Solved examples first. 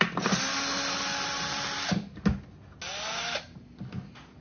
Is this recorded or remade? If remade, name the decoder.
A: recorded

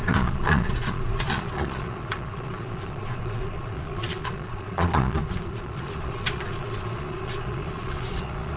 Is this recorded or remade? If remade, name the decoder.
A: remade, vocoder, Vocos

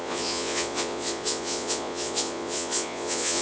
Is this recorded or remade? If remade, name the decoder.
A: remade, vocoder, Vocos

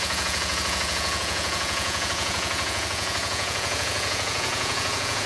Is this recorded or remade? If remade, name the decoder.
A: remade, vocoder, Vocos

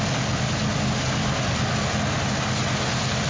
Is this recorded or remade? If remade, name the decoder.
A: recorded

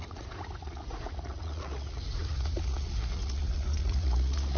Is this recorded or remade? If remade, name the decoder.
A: remade, vocoder, Vocos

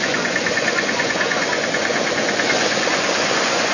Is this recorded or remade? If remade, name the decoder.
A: remade, vocoder, Vocos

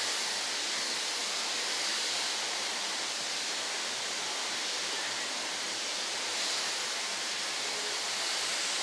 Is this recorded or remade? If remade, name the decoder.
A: recorded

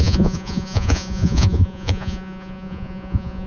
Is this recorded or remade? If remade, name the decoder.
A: remade, vocoder, Vocos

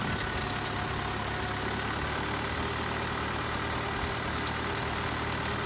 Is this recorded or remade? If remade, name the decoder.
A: recorded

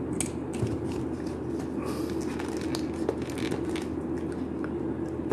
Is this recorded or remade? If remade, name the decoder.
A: recorded